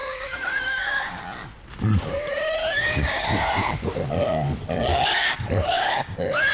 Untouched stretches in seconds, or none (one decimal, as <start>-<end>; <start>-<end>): 1.2-2.6; 3.2-4.9

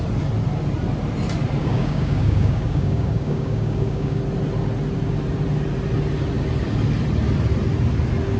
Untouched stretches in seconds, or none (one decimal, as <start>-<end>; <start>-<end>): 0.0-1.6; 4.2-8.4

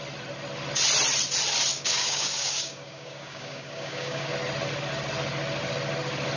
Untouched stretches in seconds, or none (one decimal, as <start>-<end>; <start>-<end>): 0.0-1.7; 4.3-6.4

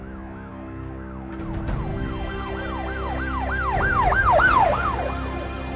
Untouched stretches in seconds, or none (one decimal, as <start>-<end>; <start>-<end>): 0.0-0.5; 1.3-1.9; 2.5-5.8

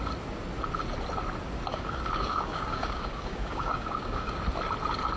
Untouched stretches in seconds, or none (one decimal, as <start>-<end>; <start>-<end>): 0.0-1.7; 4.4-5.2